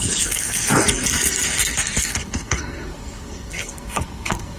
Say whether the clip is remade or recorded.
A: remade